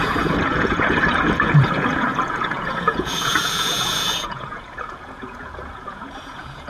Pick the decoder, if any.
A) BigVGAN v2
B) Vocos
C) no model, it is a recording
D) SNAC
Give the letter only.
B